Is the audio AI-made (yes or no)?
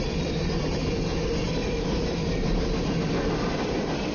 no